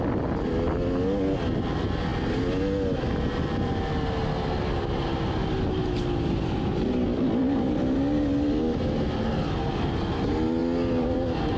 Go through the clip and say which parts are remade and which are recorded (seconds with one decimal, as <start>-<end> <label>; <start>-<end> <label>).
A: 0.0-11.6 recorded